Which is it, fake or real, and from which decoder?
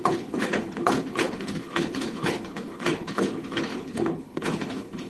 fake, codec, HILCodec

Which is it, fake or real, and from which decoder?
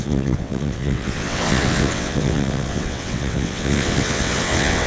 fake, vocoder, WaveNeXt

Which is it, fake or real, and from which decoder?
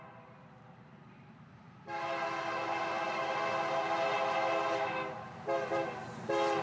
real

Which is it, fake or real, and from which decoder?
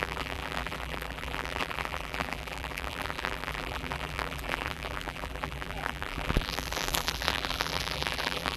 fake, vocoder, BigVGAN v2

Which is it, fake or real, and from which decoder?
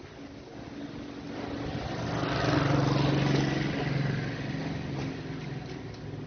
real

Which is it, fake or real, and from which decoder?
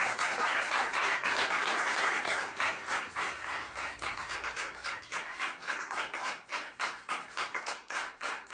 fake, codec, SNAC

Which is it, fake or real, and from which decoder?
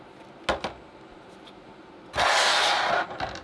real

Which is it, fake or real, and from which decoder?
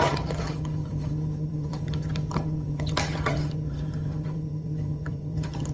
fake, vocoder, HiFi-GAN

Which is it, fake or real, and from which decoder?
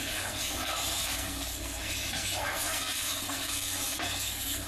fake, codec, SNAC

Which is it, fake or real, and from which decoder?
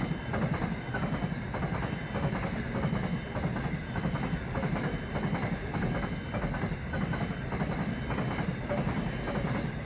real